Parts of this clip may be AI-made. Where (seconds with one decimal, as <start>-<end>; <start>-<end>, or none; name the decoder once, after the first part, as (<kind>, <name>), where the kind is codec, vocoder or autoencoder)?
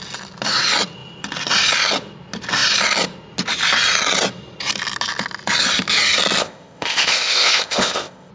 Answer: 6.4-8.3 (codec, ZipCodec)